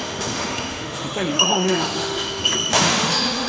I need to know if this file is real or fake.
fake